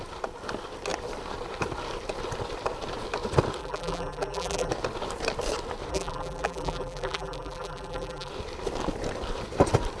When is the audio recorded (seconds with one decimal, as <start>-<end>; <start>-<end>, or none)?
0.0-3.6; 4.7-5.9; 8.3-10.0